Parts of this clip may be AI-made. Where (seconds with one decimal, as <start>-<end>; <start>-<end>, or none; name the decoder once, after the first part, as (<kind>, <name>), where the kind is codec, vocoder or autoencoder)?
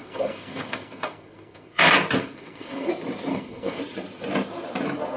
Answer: 0.0-1.8 (codec, SNAC); 2.2-2.9; 3.3-3.8